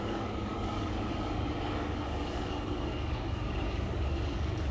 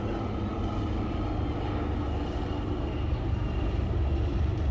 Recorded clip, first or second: second